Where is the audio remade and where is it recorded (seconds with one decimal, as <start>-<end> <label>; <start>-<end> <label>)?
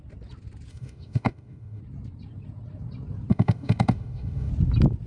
0.0-0.7 recorded; 0.7-1.8 remade; 1.8-3.3 recorded; 3.3-4.5 remade; 4.5-5.1 recorded